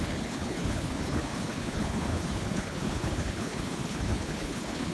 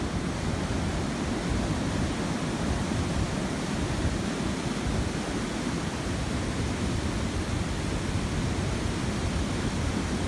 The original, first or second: second